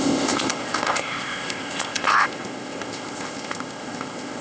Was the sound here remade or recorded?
remade